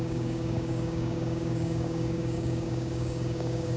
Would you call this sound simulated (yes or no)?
yes